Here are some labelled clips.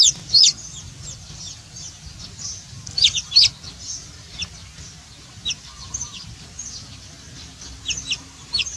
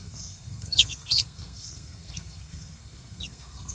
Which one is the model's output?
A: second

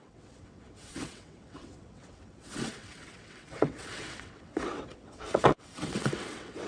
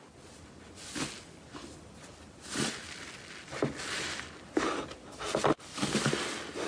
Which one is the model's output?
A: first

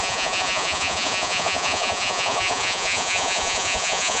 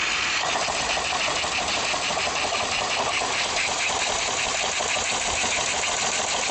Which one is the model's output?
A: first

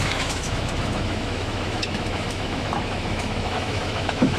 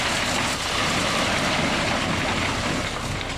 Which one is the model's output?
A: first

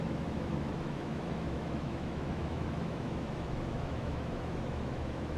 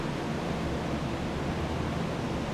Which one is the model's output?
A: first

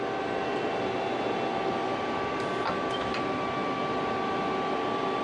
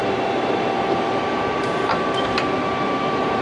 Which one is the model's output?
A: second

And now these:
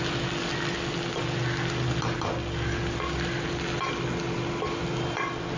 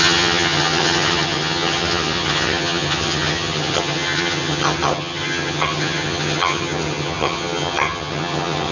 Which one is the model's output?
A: second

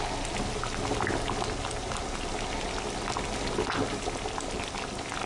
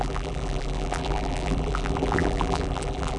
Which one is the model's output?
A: second